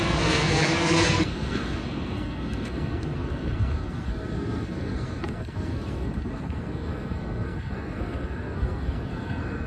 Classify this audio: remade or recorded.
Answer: remade